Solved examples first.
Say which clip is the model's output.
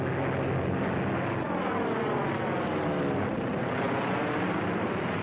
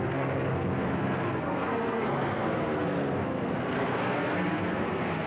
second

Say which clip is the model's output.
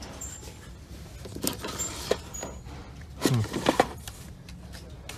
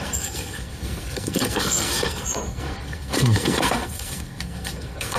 second